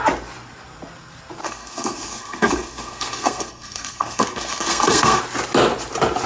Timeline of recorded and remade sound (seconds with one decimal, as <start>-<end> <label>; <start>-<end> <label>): 0.0-1.4 recorded; 1.4-5.2 remade; 5.2-6.3 recorded